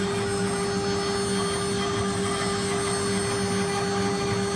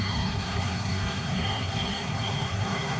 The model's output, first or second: second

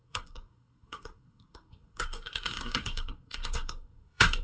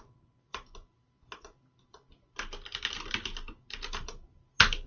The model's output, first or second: first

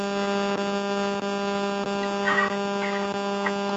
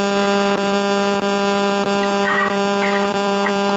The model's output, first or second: second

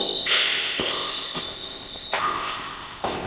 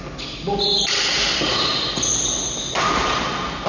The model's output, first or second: first